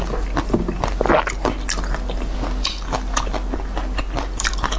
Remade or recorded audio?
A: recorded